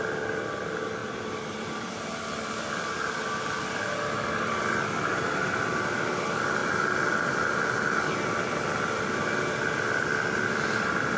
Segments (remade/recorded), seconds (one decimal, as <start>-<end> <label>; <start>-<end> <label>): 0.0-1.0 recorded; 1.0-2.1 remade; 2.1-5.1 recorded; 5.1-5.6 remade; 5.6-11.2 recorded